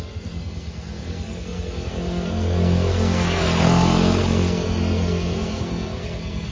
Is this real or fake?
fake